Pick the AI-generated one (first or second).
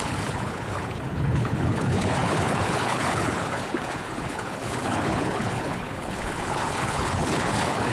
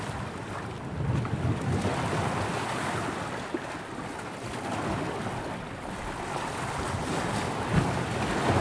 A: first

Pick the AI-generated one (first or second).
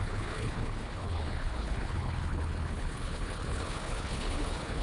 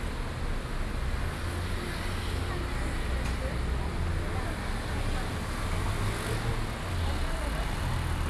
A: first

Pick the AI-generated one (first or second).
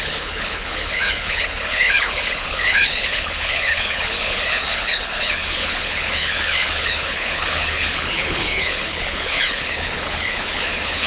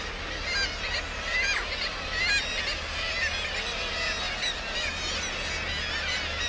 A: first